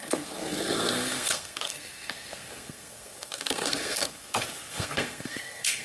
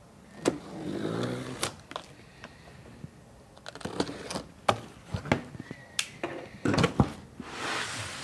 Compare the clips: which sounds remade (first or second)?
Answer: first